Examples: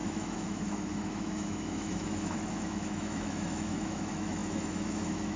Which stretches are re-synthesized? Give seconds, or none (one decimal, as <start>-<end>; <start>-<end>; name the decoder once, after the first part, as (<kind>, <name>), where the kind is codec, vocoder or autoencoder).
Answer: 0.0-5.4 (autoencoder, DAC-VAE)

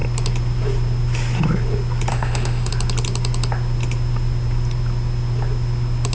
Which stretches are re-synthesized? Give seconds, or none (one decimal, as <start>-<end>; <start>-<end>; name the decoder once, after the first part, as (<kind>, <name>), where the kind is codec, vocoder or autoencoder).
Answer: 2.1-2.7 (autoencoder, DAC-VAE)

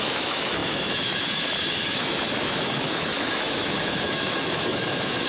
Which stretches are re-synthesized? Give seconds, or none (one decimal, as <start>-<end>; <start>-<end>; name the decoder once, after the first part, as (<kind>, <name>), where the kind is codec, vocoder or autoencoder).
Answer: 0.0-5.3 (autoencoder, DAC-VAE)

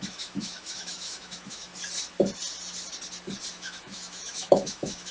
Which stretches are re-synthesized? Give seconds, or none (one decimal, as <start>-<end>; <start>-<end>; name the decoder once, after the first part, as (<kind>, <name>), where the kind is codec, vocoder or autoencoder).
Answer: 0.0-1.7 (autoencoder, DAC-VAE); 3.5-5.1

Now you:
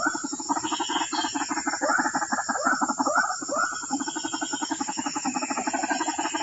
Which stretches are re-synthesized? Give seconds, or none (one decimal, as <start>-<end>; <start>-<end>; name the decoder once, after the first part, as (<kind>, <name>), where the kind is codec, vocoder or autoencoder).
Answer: 4.5-5.5 (autoencoder, DAC-VAE)